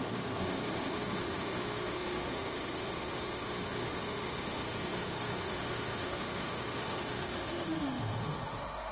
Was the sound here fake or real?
fake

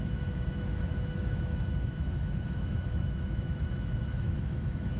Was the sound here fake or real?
fake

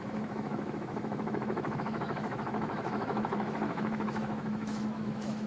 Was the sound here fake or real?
fake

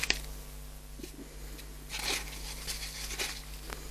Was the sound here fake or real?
real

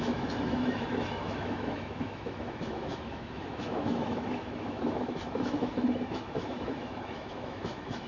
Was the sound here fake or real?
fake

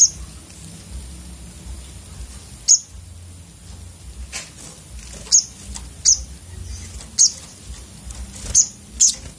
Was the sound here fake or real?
real